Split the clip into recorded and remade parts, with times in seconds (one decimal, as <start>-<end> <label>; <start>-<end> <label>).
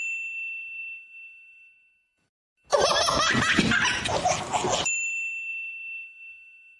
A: 0.0-6.8 recorded